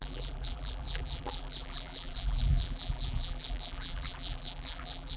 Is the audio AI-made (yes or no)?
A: yes